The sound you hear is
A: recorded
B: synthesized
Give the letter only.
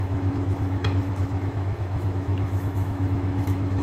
B